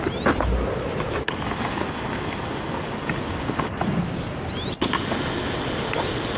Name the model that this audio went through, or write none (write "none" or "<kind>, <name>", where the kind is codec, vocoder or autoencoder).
none